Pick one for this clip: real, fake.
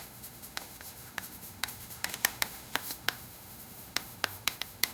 fake